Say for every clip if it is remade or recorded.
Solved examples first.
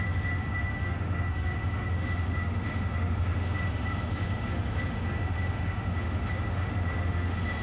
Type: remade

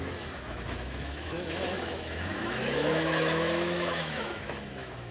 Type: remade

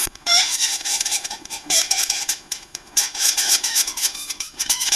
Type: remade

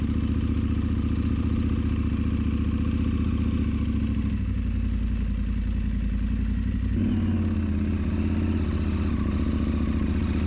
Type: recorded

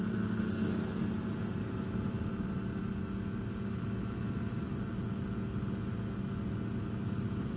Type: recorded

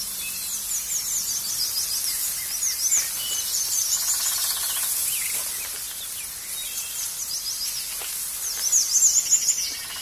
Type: recorded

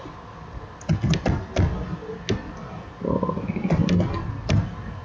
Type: recorded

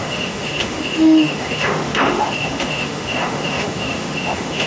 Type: remade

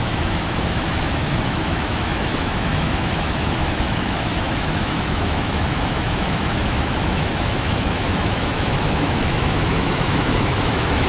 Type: remade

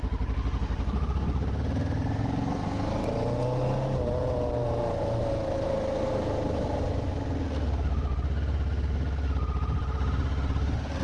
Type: recorded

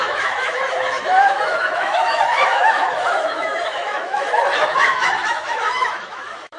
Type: remade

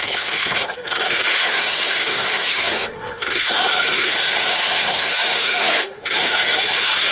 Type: remade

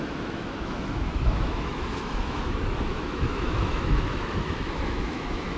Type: remade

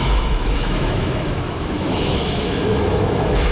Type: remade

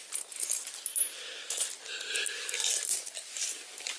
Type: recorded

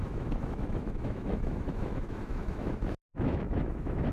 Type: remade